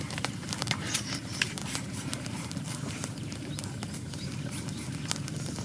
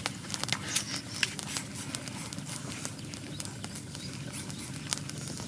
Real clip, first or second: second